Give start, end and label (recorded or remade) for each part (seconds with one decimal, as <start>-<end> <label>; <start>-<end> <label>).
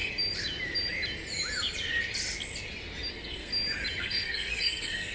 0.0-3.1 recorded; 3.1-3.5 remade; 3.5-4.0 recorded; 4.0-5.1 remade